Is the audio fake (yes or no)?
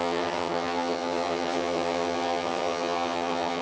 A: yes